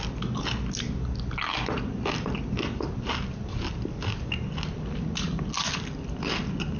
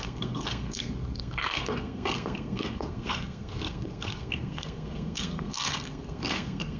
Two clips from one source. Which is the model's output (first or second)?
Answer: second